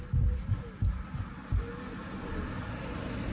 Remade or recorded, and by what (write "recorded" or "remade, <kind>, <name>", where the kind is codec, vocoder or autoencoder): recorded